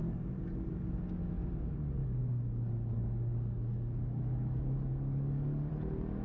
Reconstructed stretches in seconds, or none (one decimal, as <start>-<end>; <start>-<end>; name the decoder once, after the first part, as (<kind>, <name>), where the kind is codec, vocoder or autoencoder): 2.0-5.7 (codec, DAC)